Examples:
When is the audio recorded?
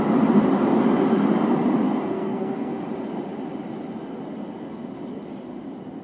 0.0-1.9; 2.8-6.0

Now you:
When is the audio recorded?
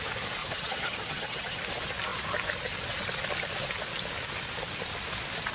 0.0-0.4; 1.6-5.5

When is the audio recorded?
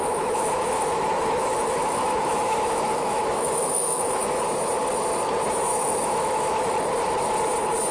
4.4-5.7; 6.7-7.9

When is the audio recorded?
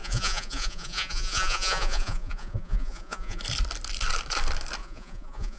3.4-4.8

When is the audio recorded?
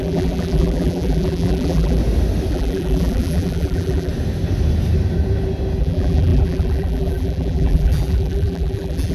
2.0-2.5; 4.1-5.8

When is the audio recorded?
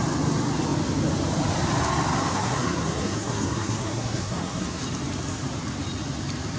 0.0-2.3; 4.8-6.6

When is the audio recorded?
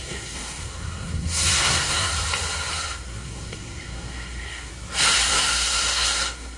2.1-2.7; 4.7-5.3